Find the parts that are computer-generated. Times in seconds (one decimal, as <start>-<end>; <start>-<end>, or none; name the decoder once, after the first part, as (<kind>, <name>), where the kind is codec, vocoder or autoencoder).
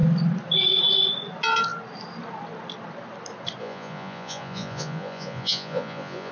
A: 3.6-6.3 (vocoder, Vocos)